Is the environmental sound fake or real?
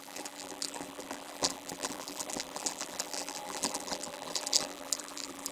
fake